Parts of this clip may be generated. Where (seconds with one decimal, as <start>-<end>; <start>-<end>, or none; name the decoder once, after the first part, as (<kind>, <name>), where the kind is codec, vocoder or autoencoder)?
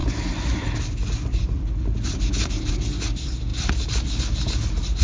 none